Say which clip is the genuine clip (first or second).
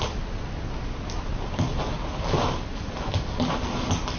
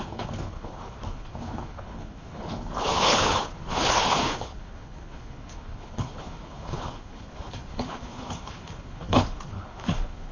first